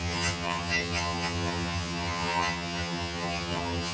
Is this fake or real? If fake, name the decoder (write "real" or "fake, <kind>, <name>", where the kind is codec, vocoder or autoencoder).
fake, vocoder, HiFi-GAN